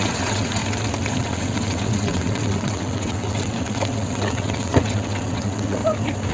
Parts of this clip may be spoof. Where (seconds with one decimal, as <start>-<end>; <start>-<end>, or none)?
0.0-0.6; 1.1-5.8